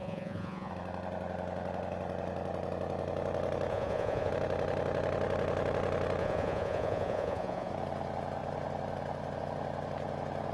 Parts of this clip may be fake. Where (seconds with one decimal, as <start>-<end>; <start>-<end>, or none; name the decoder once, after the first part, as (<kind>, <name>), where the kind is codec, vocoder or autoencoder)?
0.0-0.7 (vocoder, Vocos); 3.7-4.3; 6.2-7.7